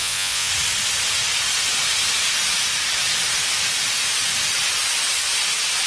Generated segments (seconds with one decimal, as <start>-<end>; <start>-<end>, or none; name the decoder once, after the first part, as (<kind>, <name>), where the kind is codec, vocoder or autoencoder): 0.0-0.5 (vocoder, Vocos)